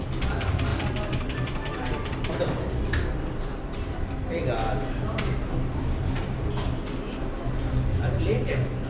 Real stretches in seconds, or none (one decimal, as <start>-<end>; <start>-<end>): 0.0-0.7; 2.3-8.9